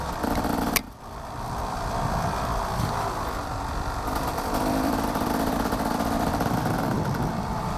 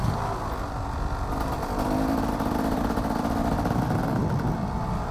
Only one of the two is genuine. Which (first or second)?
second